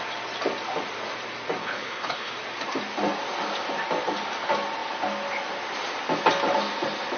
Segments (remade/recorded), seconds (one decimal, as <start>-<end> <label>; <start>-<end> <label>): 0.0-1.6 recorded; 1.6-2.3 remade; 2.3-7.2 recorded